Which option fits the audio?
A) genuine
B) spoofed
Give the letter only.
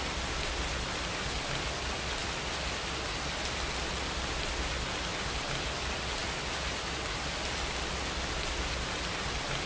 A